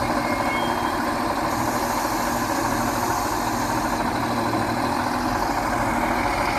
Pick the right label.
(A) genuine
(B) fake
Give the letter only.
A